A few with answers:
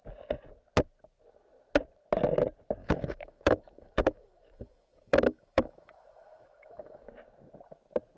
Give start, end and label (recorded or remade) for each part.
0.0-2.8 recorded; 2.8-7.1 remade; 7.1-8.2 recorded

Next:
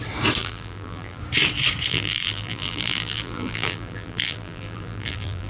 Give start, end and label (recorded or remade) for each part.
0.0-0.4 recorded; 0.4-1.2 remade; 1.2-1.9 recorded; 1.9-5.5 remade

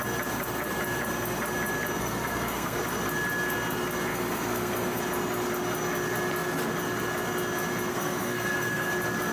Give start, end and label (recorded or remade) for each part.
0.0-2.0 recorded; 2.0-2.8 remade; 2.8-4.1 recorded; 4.1-5.0 remade; 5.0-7.9 recorded; 7.9-8.9 remade; 8.9-9.3 recorded

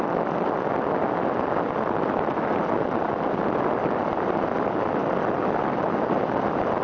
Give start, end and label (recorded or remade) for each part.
0.0-6.8 recorded

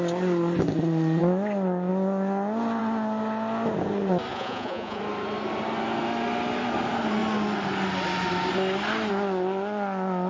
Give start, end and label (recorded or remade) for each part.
0.0-4.3 recorded; 4.3-5.0 remade; 5.0-10.3 recorded